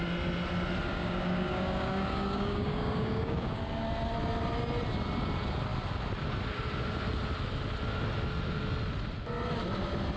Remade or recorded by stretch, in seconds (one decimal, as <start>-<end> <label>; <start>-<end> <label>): 0.0-0.9 recorded; 0.9-3.6 remade; 3.6-10.2 recorded

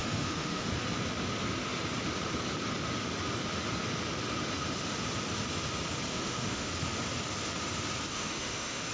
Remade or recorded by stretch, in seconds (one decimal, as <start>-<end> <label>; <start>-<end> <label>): 0.0-0.7 remade; 0.7-6.1 recorded; 6.1-6.7 remade; 6.7-8.1 recorded; 8.1-8.9 remade

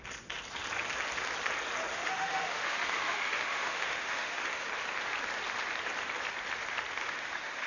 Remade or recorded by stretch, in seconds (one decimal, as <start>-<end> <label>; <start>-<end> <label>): 0.0-1.9 recorded; 1.9-4.7 remade; 4.7-7.0 recorded; 7.0-7.7 remade

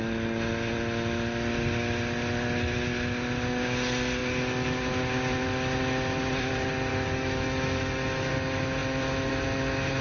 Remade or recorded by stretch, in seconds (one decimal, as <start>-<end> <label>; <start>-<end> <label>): 0.0-6.9 recorded; 6.9-8.3 remade; 8.3-10.0 recorded

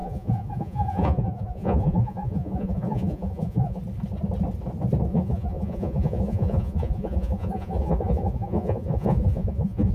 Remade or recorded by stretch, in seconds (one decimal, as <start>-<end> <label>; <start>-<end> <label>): 0.0-3.8 remade; 3.8-5.1 recorded; 5.1-9.9 remade

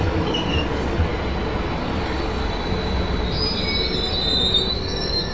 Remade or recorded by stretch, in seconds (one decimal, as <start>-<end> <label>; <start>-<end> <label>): 0.0-1.1 remade; 1.1-1.8 recorded; 1.8-2.4 remade; 2.4-4.7 recorded; 4.7-5.3 remade

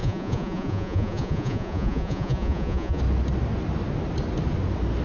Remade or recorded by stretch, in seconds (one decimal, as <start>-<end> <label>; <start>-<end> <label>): 0.0-3.0 remade; 3.0-5.0 recorded

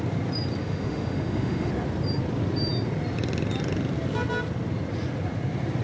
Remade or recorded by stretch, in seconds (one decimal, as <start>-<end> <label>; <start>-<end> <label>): 0.0-0.6 recorded; 0.6-1.7 remade; 1.7-5.8 recorded